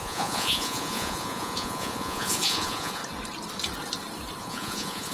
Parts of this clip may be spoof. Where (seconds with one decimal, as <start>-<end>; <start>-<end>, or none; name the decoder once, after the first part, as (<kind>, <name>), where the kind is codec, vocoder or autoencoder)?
0.0-3.0 (vocoder, Vocos); 4.4-5.1